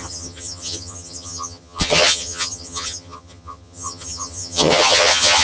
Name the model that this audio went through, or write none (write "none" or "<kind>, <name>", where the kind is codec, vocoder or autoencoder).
vocoder, HiFi-GAN